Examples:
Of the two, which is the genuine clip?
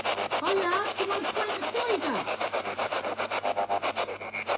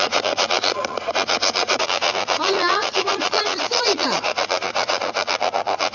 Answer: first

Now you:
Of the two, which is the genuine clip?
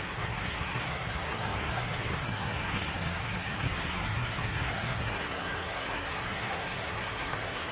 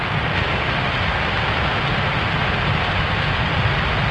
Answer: second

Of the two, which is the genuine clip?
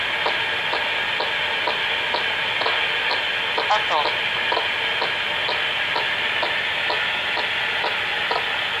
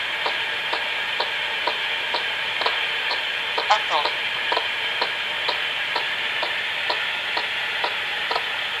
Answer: first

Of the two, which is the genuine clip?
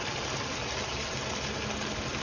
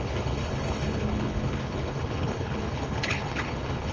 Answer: first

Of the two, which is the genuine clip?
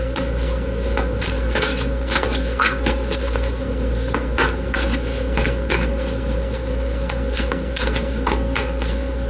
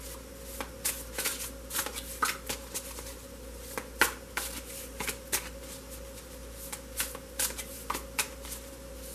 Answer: second